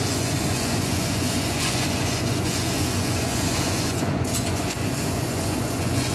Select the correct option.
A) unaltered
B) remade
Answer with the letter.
B